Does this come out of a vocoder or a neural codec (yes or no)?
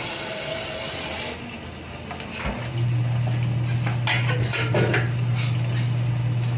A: no